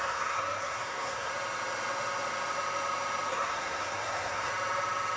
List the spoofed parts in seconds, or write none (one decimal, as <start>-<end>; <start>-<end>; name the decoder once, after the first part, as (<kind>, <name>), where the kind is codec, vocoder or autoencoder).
0.0-1.3 (codec, SNAC); 3.3-4.5